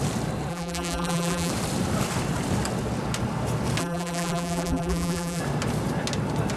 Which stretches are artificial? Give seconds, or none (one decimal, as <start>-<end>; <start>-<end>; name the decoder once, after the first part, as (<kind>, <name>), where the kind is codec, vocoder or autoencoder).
0.5-1.5 (vocoder, BigVGAN v2); 3.8-5.4

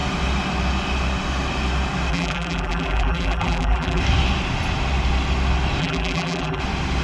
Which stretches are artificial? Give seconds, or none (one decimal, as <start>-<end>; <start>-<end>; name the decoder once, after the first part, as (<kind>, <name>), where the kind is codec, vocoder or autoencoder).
2.1-4.0 (vocoder, BigVGAN v2); 5.8-6.6

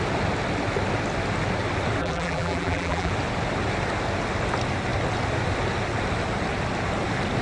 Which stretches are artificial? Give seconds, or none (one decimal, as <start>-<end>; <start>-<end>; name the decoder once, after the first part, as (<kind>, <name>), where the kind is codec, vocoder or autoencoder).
2.0-3.1 (vocoder, BigVGAN v2)

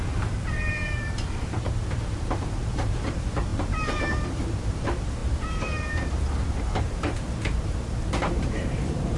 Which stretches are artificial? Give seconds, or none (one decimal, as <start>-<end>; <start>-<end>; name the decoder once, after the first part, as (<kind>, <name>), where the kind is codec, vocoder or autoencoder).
0.0-9.2 (vocoder, BigVGAN v2)

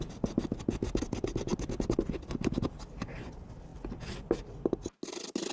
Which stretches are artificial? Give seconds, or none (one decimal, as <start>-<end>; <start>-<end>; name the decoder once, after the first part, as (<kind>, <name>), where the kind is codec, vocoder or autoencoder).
none

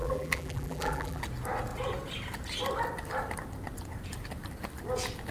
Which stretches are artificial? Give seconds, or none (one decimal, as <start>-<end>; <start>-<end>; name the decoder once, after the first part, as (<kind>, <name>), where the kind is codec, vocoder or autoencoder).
0.0-1.2 (vocoder, BigVGAN v2)